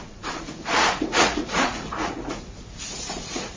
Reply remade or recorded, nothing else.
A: remade